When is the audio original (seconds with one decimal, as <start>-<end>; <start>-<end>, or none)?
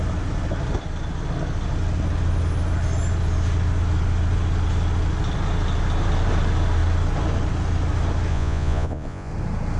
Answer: 0.0-8.3; 9.3-9.8